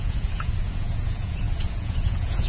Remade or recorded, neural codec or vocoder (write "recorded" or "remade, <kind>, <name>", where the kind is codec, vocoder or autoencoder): remade, vocoder, Vocos